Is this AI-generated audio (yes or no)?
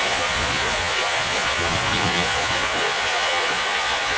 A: yes